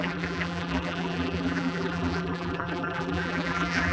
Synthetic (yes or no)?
yes